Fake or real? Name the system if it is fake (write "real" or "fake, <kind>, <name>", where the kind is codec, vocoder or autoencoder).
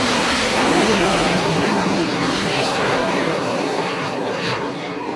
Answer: fake, codec, SNAC